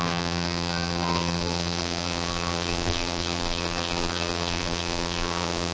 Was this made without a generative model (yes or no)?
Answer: no